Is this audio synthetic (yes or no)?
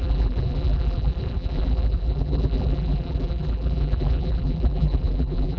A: yes